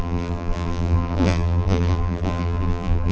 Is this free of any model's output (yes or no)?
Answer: no